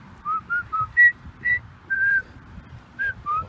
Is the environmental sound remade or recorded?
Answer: remade